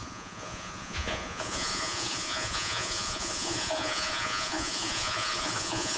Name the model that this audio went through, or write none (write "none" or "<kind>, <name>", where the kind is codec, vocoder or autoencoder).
vocoder, Vocos